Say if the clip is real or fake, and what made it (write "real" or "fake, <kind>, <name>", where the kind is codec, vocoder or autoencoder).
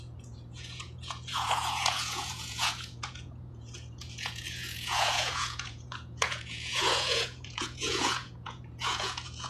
fake, vocoder, Vocos